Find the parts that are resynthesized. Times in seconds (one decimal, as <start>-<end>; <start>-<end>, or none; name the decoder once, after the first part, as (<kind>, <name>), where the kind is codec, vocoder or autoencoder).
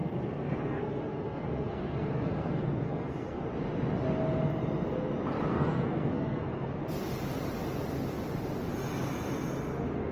0.0-3.4 (codec, SNAC); 5.5-6.8